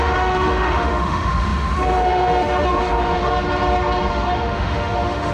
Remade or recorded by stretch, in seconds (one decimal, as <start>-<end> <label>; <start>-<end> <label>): 0.0-3.3 remade; 3.3-4.1 recorded; 4.1-5.3 remade